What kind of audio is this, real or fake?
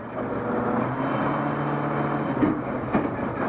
real